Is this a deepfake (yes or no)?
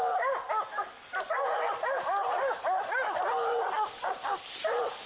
no